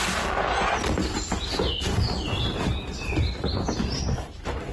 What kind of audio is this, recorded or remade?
recorded